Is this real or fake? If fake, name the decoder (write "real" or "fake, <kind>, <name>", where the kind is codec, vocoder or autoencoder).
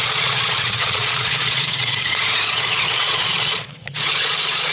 fake, vocoder, Vocos